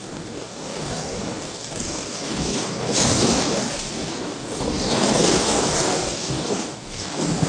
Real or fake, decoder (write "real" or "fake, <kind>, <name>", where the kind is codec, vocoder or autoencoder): fake, codec, DAC